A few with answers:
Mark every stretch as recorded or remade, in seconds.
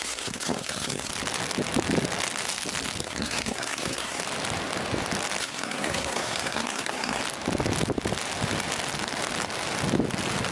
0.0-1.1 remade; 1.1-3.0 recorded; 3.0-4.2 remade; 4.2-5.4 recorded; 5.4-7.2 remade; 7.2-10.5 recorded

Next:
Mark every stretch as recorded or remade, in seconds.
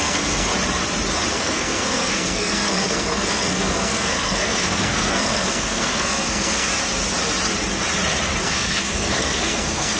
0.0-0.5 remade; 0.5-1.3 recorded; 1.3-6.7 remade; 6.7-8.4 recorded; 8.4-10.0 remade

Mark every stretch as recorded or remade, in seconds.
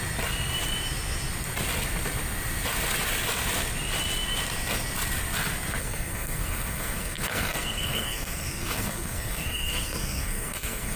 0.0-5.8 recorded; 5.8-11.0 remade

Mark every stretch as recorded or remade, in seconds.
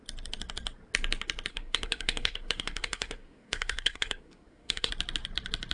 0.0-1.5 recorded; 1.5-4.9 remade; 4.9-5.7 recorded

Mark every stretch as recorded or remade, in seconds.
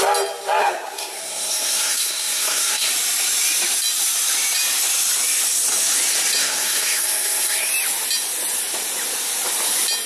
0.0-0.6 recorded; 0.6-2.9 remade; 2.9-6.4 recorded; 6.4-7.7 remade; 7.7-10.1 recorded